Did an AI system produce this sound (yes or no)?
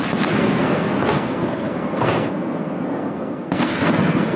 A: yes